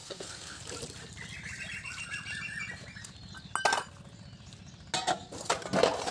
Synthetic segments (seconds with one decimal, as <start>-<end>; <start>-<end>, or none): 0.0-0.6

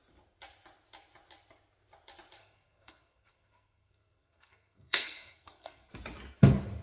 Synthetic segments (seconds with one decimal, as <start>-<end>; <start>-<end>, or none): 2.4-5.9

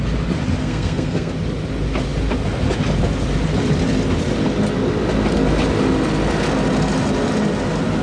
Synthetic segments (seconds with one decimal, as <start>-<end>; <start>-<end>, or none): 0.6-1.3

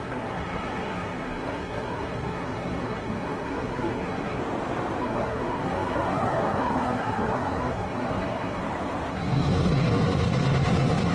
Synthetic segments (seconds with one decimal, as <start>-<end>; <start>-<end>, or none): 0.0-4.4; 5.0-8.6; 9.1-11.1

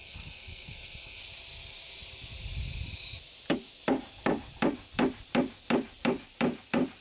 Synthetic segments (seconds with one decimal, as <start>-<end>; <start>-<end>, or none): 0.0-1.2

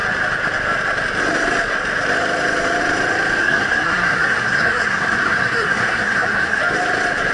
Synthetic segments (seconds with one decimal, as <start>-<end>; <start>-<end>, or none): 3.4-6.6

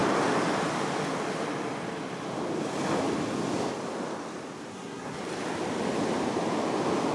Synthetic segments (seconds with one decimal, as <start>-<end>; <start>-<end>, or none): 4.7-5.2